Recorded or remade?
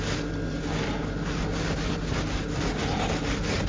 recorded